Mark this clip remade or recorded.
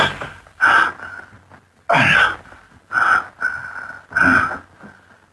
recorded